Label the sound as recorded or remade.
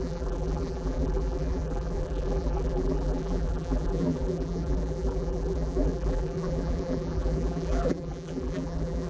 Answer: remade